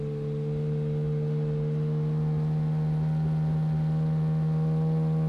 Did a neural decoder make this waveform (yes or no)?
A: no